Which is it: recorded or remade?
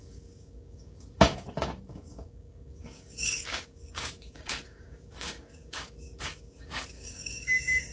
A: remade